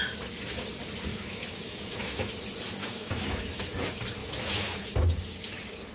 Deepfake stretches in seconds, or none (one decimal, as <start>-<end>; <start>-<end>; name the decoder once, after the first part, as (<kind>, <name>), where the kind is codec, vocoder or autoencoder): 1.1-2.3 (autoencoder, DAC-VAE); 2.8-3.6; 4.2-4.9